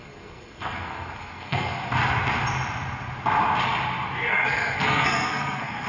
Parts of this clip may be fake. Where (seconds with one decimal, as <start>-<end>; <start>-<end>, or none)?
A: 0.0-2.0; 4.3-5.9